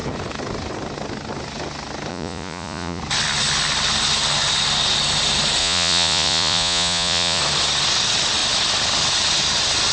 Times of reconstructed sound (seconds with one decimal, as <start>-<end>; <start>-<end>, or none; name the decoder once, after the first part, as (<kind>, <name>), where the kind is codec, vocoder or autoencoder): 2.1-3.0 (vocoder, Vocos); 5.6-7.4